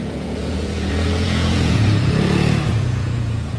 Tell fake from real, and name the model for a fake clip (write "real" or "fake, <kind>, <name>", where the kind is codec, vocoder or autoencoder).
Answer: fake, vocoder, Vocos